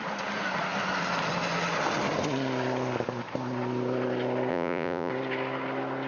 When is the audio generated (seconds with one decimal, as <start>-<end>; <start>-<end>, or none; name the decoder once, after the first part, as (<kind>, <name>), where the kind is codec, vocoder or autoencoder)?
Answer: 4.5-5.1 (vocoder, Vocos)